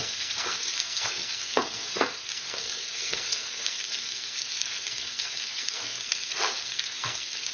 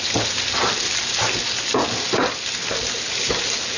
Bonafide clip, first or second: second